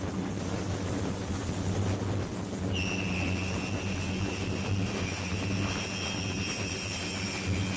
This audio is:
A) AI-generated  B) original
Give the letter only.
B